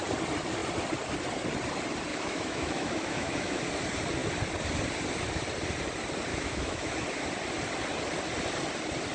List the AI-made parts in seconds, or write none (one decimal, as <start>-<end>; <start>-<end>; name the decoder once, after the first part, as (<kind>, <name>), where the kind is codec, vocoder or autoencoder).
2.1-3.6 (autoencoder, DAC-VAE); 6.3-6.9